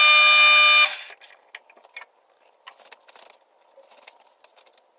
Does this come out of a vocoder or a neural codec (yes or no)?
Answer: no